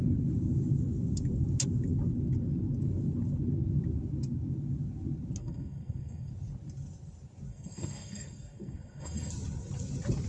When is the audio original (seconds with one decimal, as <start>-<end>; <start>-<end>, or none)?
0.0-5.4; 6.3-7.5; 9.3-10.3